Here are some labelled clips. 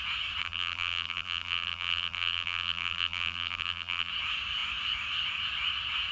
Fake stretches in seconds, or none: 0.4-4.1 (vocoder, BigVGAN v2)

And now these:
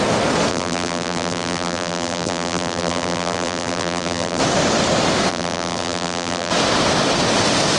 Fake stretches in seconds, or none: 0.5-4.4 (vocoder, BigVGAN v2); 5.3-6.5

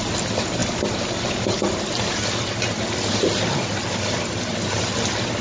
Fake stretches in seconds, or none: none

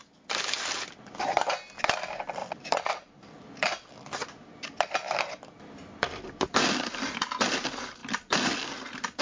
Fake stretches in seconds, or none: 0.0-0.6 (vocoder, BigVGAN v2); 2.4-7.2

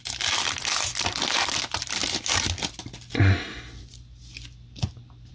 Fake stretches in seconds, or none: none

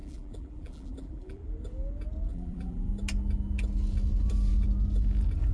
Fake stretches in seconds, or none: 0.0-1.4 (vocoder, BigVGAN v2); 2.3-2.9